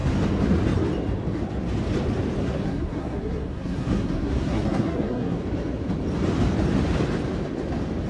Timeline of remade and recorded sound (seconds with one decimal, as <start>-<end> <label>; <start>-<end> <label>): 0.0-2.4 recorded; 2.4-5.4 remade; 5.4-8.1 recorded